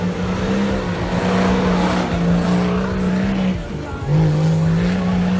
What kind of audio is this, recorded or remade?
recorded